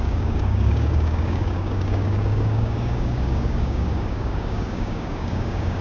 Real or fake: fake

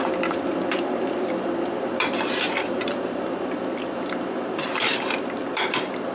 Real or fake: fake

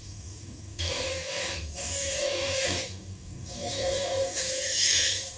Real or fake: fake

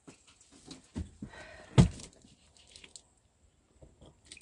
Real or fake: real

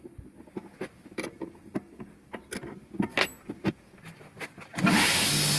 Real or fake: real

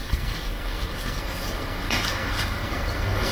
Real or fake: fake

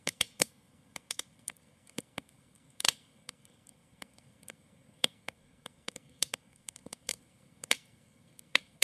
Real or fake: fake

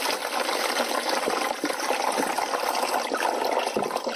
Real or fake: real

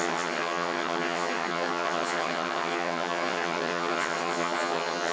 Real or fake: fake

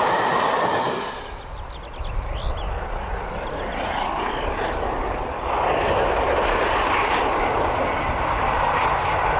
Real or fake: real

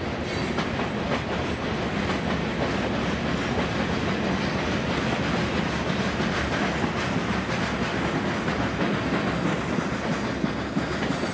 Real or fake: real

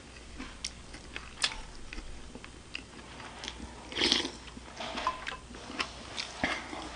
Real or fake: real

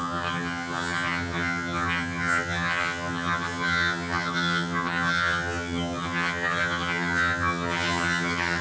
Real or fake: fake